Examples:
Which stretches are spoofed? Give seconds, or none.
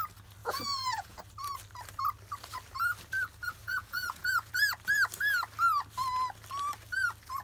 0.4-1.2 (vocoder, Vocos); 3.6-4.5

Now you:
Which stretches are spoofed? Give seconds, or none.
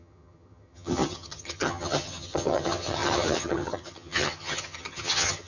0.0-5.5 (vocoder, HiFi-GAN)